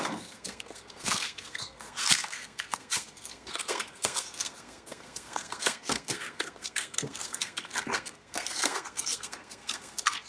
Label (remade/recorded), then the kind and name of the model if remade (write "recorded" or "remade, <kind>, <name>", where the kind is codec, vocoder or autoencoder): remade, codec, SNAC